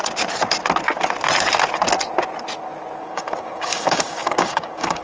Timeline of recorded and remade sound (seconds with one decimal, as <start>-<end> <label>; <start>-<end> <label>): 0.0-3.0 recorded; 3.0-5.0 remade